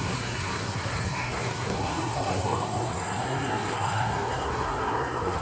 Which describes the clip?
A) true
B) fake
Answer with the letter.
B